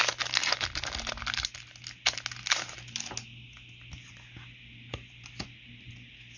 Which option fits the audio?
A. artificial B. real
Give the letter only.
B